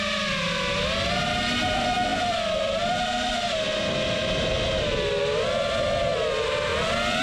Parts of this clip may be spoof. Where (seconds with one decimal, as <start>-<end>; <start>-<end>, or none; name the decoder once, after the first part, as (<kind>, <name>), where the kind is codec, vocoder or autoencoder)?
2.1-5.1 (vocoder, BigVGAN v2); 6.7-7.2

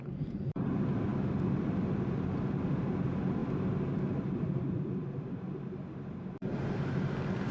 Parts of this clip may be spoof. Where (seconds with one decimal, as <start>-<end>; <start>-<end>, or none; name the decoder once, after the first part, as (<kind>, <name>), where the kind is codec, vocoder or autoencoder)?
none

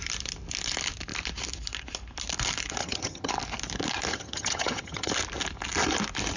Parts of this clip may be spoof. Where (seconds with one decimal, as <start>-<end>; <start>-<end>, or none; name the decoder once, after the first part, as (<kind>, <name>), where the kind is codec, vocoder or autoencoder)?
2.8-3.3 (vocoder, HiFi-GAN); 4.1-5.1

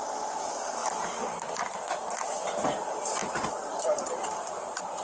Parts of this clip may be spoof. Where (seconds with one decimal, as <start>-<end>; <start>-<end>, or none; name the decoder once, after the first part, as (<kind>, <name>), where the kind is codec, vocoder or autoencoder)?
none

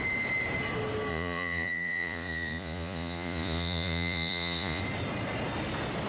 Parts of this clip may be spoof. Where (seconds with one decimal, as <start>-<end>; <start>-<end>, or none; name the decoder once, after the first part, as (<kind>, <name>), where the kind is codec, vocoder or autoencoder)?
1.1-4.8 (vocoder, Vocos)

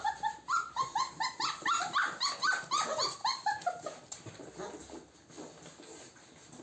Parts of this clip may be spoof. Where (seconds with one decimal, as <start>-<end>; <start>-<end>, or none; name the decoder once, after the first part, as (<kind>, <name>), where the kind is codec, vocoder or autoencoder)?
none

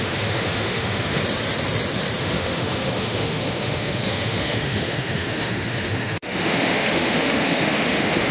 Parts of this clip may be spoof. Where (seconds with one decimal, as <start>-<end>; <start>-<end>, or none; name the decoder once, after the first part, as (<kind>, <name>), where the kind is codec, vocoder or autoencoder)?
0.0-1.2 (autoencoder, DAC-VAE); 2.2-8.3

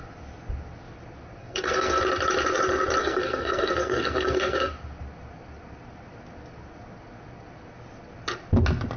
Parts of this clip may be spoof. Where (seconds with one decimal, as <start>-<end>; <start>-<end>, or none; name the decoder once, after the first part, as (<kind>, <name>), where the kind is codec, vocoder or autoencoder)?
1.4-2.0 (codec, SNAC); 3.0-4.7